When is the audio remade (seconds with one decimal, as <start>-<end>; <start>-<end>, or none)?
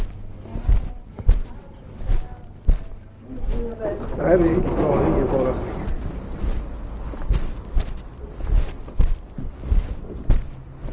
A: none